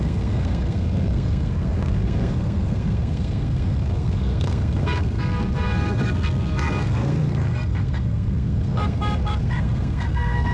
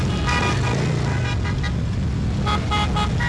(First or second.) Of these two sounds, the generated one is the first